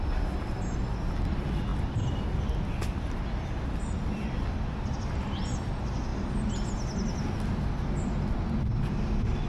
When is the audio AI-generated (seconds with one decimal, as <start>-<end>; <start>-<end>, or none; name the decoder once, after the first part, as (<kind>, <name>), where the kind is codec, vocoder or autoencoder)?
none